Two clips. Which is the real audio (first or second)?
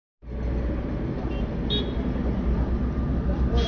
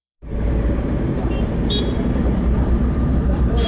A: first